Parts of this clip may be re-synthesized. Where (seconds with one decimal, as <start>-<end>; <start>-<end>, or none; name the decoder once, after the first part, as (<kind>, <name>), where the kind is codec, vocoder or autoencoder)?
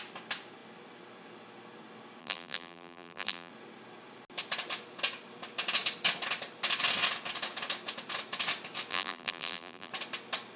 2.2-3.5 (vocoder, BigVGAN v2); 8.9-9.9